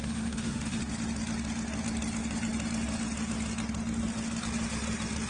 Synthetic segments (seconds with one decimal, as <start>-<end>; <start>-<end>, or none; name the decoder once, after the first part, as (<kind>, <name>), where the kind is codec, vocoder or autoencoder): 0.0-0.8 (autoencoder, DAC-VAE)